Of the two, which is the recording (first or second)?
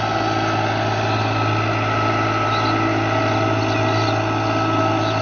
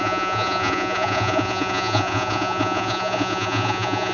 first